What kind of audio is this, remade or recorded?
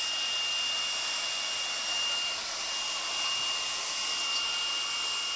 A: recorded